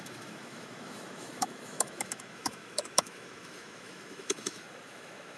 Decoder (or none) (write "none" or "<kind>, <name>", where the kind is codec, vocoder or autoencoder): autoencoder, DAC-VAE